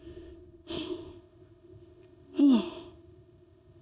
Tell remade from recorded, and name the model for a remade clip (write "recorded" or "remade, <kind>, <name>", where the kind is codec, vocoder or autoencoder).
remade, codec, ZipCodec